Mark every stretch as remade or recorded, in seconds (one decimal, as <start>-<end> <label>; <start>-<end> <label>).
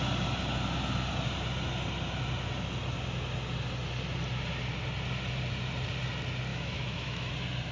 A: 0.0-6.5 recorded; 6.5-7.3 remade; 7.3-7.7 recorded